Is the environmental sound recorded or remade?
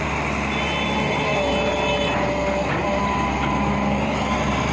recorded